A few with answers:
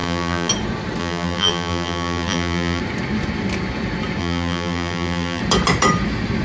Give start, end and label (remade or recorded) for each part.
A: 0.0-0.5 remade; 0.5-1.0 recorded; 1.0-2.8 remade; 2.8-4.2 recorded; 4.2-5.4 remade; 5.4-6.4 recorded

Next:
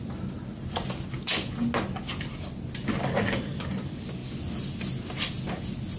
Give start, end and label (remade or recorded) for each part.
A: 0.0-6.0 recorded

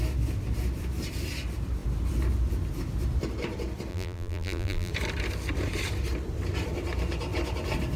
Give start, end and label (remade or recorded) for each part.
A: 0.0-3.9 recorded; 3.9-4.9 remade; 4.9-8.0 recorded

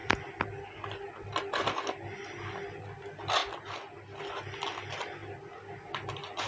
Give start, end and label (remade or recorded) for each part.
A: 0.0-6.5 recorded

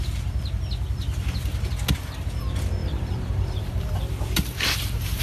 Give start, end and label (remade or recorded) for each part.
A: 0.0-2.8 recorded; 2.8-5.2 remade

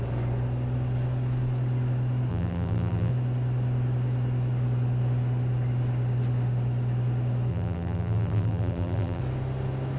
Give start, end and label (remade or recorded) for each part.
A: 0.0-2.3 recorded; 2.3-3.1 remade; 3.1-7.5 recorded; 7.5-9.2 remade; 9.2-10.0 recorded

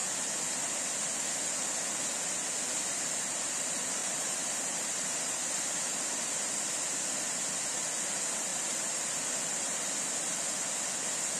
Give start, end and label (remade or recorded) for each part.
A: 0.0-4.0 recorded; 4.0-5.6 remade; 5.6-8.5 recorded; 8.5-9.2 remade; 9.2-11.4 recorded